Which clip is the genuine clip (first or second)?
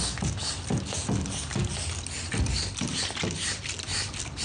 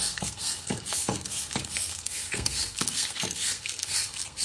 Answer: first